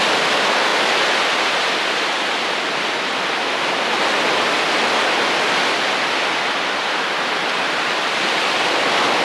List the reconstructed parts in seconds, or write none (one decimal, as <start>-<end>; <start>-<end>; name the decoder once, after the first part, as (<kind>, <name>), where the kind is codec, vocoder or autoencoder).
none